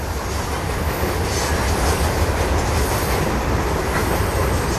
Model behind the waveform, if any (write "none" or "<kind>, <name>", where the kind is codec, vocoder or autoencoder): none